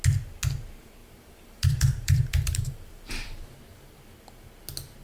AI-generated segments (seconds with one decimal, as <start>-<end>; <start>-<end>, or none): 1.0-4.0